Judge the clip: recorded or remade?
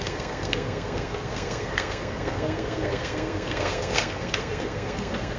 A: remade